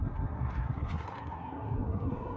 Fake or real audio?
fake